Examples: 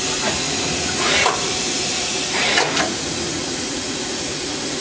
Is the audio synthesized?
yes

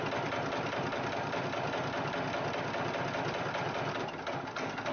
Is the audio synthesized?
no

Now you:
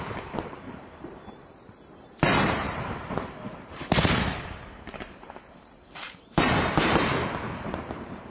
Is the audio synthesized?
yes